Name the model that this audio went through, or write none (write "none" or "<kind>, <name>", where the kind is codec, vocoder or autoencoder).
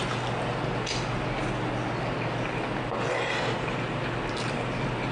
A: none